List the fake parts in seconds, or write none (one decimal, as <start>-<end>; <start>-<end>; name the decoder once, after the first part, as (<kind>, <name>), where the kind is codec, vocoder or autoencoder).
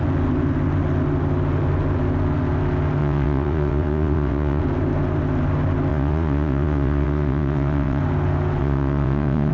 3.0-4.6 (vocoder, WaveNeXt); 5.9-8.0; 8.6-9.5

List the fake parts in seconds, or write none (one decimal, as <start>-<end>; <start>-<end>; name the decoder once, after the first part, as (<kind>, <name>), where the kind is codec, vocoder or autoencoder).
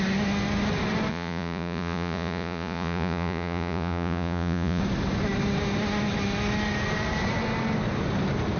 1.1-4.8 (vocoder, Vocos)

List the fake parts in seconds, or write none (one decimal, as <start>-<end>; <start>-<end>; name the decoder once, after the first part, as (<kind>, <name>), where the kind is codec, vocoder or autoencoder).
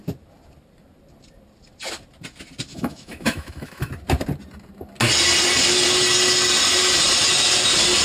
2.7-3.9 (autoencoder, DAC-VAE)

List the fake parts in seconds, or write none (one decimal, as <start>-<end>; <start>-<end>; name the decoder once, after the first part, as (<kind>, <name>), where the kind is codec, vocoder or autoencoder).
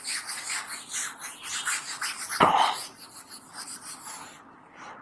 none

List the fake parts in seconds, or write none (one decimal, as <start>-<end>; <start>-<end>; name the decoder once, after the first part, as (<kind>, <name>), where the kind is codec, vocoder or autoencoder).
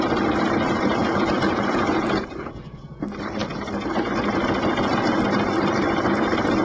1.0-2.9 (vocoder, Vocos)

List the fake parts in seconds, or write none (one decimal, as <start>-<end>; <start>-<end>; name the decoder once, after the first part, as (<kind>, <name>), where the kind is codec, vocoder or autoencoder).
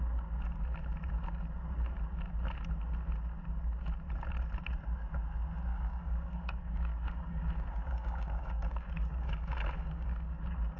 5.7-10.4 (codec, DAC)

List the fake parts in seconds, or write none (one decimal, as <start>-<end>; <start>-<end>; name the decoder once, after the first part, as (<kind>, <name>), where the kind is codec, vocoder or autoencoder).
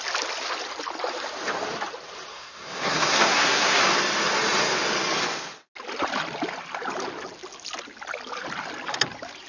2.3-3.8 (codec, SNAC)